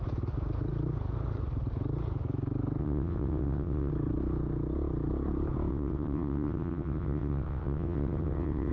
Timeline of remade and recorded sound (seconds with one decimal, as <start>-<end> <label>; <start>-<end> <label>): 0.0-2.8 recorded; 2.8-3.9 remade; 3.9-5.7 recorded; 5.7-8.7 remade